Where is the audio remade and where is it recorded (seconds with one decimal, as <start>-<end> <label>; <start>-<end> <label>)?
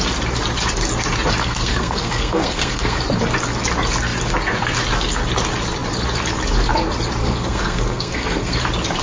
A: 0.0-1.4 recorded; 1.4-3.0 remade; 3.0-7.2 recorded; 7.2-8.6 remade; 8.6-9.0 recorded